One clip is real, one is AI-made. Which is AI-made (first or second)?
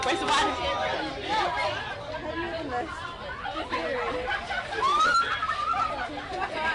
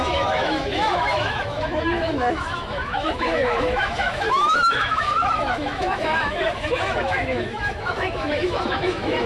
second